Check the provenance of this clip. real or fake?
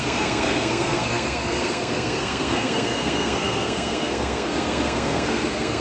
fake